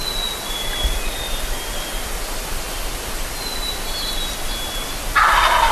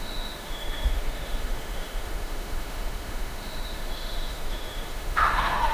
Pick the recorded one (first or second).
first